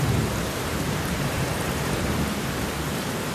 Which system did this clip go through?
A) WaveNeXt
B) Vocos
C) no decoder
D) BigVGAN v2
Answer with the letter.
D